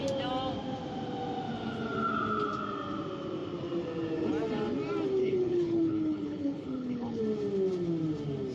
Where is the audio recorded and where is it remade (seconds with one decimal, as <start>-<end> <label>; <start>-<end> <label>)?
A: 0.0-5.2 recorded; 5.2-7.2 remade; 7.2-8.5 recorded